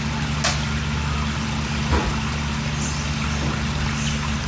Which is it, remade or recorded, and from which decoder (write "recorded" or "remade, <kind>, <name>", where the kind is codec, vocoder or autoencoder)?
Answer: recorded